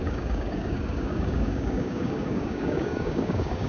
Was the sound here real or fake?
fake